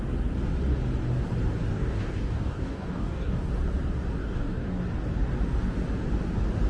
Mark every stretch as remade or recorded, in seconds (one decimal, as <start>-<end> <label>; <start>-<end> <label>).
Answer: 0.0-1.7 recorded; 1.7-3.5 remade; 3.5-4.2 recorded; 4.2-4.8 remade; 4.8-6.7 recorded